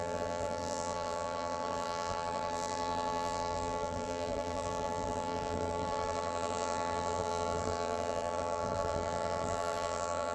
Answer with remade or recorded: remade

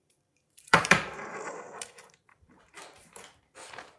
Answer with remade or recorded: remade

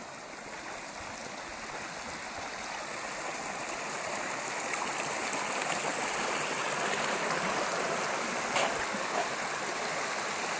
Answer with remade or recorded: recorded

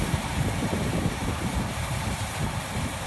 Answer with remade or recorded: remade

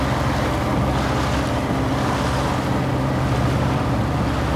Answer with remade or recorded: recorded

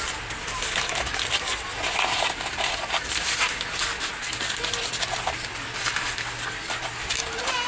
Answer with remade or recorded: recorded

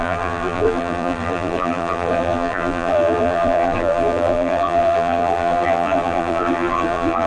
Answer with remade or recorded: remade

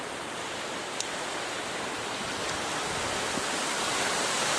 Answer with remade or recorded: recorded